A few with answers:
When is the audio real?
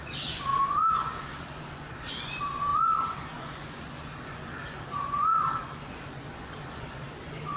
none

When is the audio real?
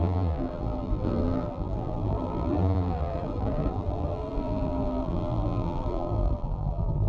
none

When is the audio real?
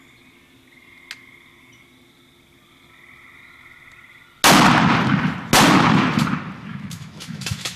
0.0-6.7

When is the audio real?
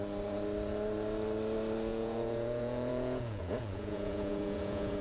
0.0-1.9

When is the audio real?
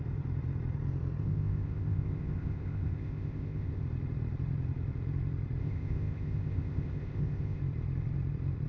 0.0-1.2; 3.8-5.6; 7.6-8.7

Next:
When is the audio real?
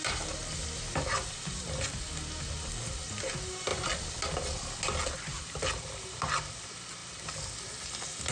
0.0-8.3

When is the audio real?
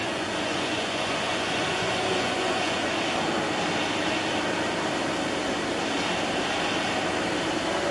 2.9-7.9